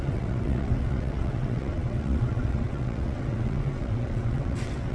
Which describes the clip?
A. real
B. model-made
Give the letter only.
B